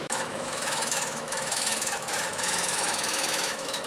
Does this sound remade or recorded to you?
remade